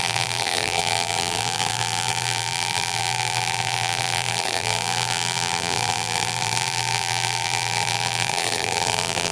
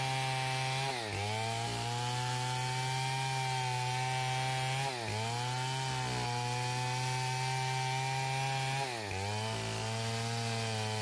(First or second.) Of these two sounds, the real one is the second